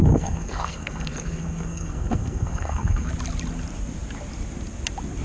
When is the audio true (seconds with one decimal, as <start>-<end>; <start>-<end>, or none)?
3.1-5.2